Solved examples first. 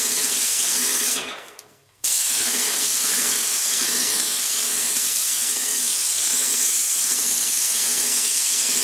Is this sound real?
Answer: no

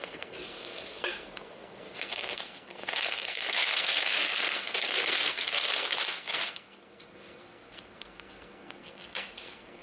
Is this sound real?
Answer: no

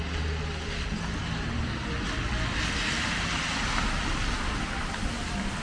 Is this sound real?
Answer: yes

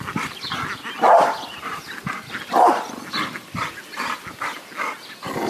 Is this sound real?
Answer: yes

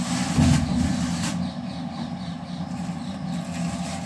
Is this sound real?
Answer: yes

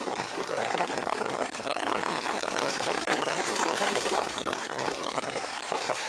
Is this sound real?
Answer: no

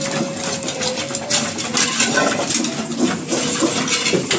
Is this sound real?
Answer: yes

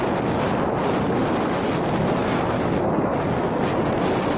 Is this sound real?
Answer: yes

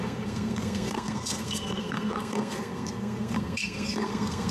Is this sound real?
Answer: no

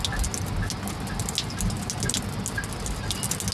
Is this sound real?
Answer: yes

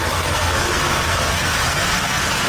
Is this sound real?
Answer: no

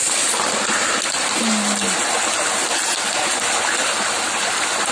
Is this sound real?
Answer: yes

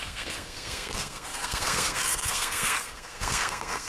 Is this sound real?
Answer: no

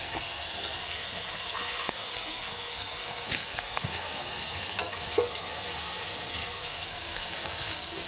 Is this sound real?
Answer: no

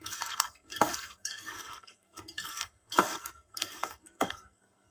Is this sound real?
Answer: no